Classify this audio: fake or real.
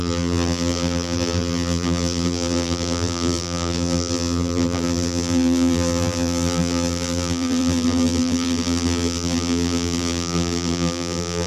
fake